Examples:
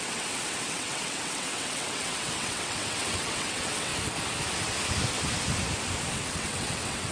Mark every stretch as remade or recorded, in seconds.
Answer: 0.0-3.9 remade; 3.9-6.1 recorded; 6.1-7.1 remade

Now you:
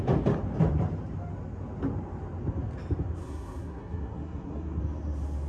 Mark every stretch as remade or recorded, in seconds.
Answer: 0.0-3.2 recorded; 3.2-4.8 remade; 4.8-5.5 recorded

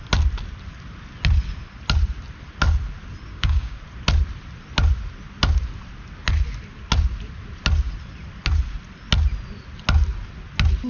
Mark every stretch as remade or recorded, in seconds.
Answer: 0.0-3.3 recorded; 3.3-3.8 remade; 3.8-10.9 recorded

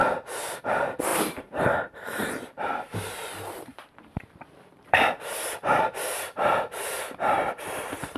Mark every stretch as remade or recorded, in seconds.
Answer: 0.0-1.1 recorded; 1.1-5.8 remade; 5.8-8.2 recorded

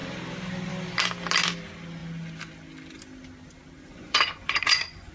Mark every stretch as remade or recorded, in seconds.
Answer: 0.0-3.9 recorded; 3.9-5.1 remade

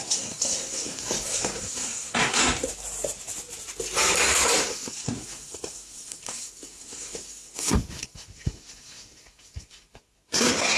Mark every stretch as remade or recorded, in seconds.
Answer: 0.0-2.4 remade; 2.4-4.6 recorded; 4.6-10.8 remade